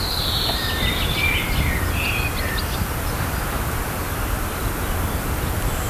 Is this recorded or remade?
recorded